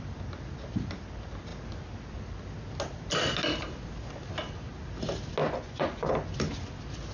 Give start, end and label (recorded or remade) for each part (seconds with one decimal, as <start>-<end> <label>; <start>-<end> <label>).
0.0-5.4 recorded; 5.4-6.1 remade; 6.1-7.1 recorded